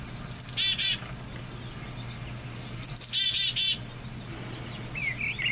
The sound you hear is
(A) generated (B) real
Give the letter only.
B